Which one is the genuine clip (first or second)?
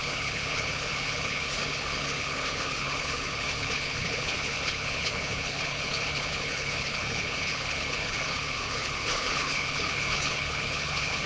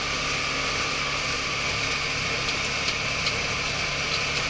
second